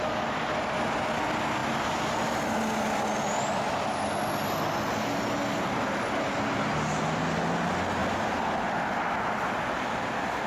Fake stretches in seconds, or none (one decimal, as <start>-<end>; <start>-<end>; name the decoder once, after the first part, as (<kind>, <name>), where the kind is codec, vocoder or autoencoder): 1.6-2.4 (vocoder, BigVGAN v2)